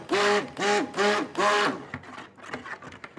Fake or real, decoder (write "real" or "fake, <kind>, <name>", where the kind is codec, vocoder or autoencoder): real